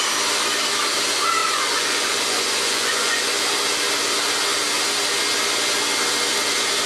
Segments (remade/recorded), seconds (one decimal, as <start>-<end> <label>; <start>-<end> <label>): 0.0-1.4 recorded; 1.4-3.4 remade; 3.4-6.9 recorded